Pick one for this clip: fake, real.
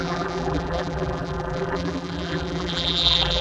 fake